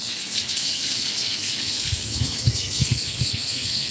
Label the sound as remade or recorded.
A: remade